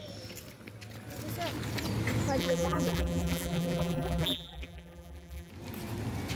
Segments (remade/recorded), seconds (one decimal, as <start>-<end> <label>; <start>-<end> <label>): 0.0-2.4 recorded; 2.4-5.5 remade; 5.5-6.4 recorded